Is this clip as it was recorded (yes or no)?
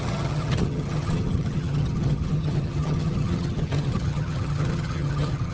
no